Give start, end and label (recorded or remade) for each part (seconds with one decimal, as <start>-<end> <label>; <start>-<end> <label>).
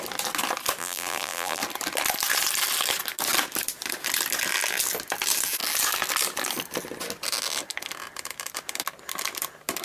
0.0-0.8 recorded; 0.8-1.6 remade; 1.6-9.8 recorded